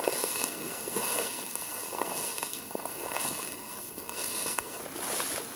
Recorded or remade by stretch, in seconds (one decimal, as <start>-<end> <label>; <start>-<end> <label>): 0.0-4.8 remade; 4.8-5.6 recorded